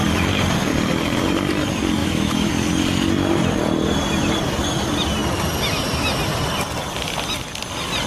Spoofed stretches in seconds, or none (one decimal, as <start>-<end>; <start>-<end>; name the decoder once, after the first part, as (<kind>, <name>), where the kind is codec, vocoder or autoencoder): 2.0-2.5 (autoencoder, DAC-VAE)